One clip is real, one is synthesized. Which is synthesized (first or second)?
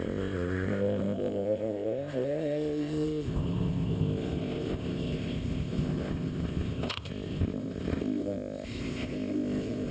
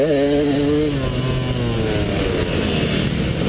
first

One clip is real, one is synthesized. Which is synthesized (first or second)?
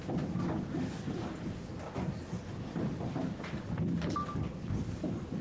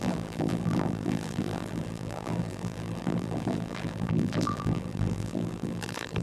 second